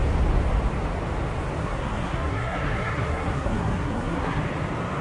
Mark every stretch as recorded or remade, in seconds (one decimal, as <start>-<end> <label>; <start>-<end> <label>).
0.0-1.6 recorded; 1.6-4.4 remade; 4.4-5.0 recorded